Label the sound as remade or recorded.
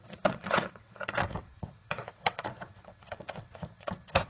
remade